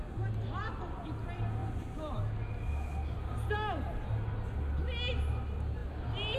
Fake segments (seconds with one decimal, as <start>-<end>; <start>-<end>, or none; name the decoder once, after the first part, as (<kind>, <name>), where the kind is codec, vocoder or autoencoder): 1.6-2.3 (vocoder, BigVGAN v2)